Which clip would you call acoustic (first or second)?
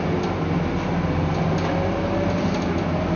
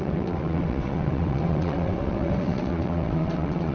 first